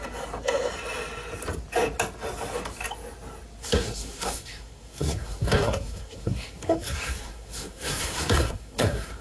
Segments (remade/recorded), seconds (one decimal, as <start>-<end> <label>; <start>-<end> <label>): 0.0-3.6 recorded; 3.6-9.2 remade